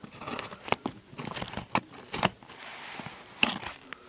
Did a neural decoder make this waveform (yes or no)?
no